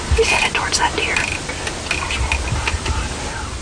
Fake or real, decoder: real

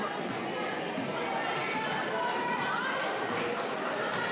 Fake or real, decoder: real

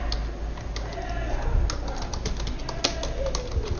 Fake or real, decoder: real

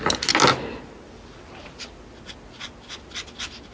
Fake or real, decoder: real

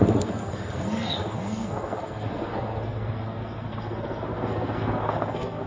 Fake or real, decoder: fake, codec, SNAC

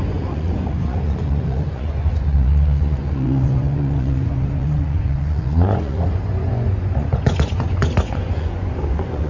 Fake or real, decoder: fake, vocoder, Vocos